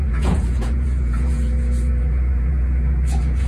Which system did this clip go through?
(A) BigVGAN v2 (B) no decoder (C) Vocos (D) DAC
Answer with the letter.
C